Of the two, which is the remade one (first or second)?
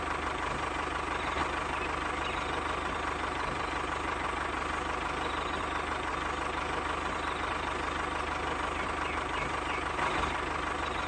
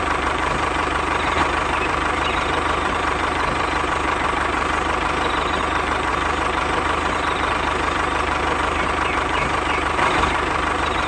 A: second